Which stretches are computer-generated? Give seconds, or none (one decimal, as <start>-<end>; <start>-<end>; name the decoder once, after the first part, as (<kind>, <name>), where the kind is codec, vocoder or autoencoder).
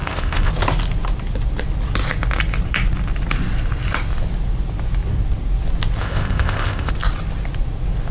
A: 0.0-0.5 (codec, ZipCodec); 6.0-6.9